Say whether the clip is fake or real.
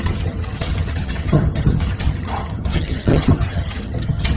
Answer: fake